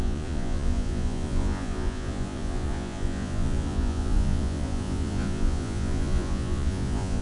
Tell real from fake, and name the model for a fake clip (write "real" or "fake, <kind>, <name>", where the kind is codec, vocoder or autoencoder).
fake, vocoder, Vocos